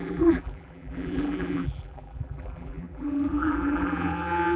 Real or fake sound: fake